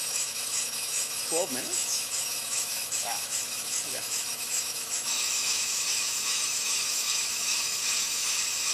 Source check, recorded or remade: remade